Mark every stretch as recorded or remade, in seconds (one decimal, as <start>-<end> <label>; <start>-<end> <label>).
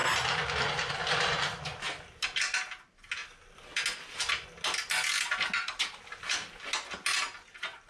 0.0-7.9 recorded